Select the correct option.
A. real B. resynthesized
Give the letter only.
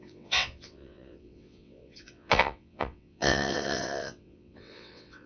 B